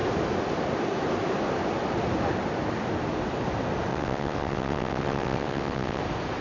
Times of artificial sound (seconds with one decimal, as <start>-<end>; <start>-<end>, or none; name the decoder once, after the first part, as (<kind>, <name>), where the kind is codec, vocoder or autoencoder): 3.9-6.0 (vocoder, WaveNeXt)